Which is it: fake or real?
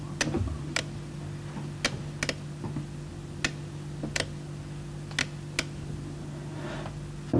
real